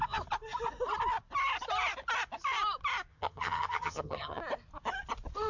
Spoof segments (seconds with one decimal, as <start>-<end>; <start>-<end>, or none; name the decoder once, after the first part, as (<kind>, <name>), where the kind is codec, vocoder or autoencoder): 3.1-4.4 (vocoder, HiFi-GAN)